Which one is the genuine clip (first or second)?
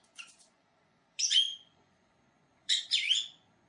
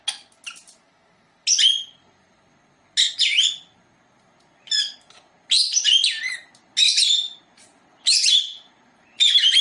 second